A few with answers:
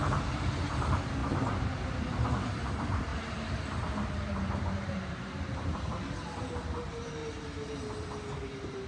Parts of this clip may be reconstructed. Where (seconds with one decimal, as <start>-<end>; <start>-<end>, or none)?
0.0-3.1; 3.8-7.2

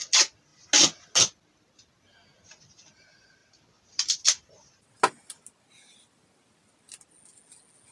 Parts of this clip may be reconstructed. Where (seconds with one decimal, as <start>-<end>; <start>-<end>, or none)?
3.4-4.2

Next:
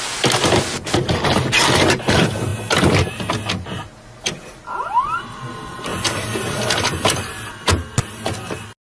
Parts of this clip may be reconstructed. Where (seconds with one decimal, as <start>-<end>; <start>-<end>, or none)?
2.5-3.3; 5.9-7.7

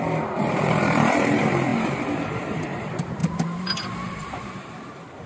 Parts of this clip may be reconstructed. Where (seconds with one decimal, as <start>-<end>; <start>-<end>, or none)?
0.0-5.3